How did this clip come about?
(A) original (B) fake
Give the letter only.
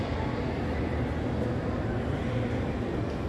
A